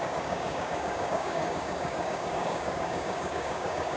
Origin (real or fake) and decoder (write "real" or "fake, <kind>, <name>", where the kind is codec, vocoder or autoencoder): fake, codec, DAC